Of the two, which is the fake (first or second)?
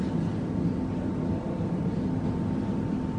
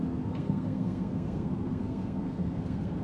second